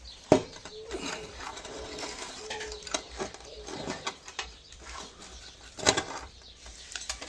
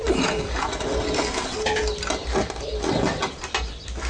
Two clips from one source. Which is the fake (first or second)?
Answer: first